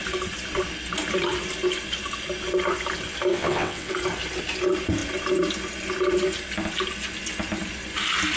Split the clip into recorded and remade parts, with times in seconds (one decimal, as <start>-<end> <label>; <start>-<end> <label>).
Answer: 0.0-3.3 recorded; 3.3-3.9 remade; 3.9-8.4 recorded